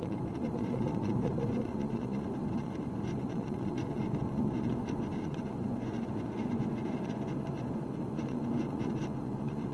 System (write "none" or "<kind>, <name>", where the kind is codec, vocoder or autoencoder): vocoder, Vocos